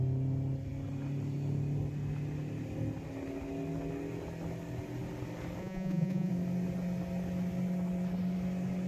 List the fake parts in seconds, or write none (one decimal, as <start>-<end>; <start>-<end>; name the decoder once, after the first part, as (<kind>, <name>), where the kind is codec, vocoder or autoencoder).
5.6-6.3 (vocoder, Vocos)